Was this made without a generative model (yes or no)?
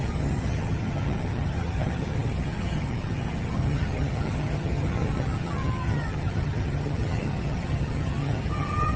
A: no